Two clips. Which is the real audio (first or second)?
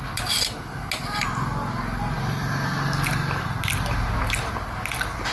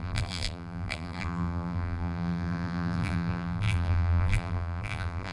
first